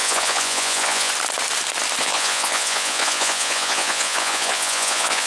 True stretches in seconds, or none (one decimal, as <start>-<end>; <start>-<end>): 1.1-2.0